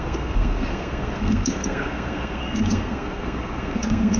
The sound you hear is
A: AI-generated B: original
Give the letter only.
A